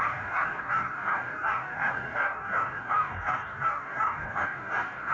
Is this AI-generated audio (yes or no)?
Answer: yes